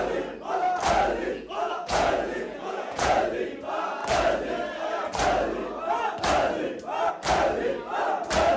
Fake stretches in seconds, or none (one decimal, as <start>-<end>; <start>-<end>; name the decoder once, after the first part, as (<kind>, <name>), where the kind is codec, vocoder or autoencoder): 1.2-3.2 (vocoder, Vocos)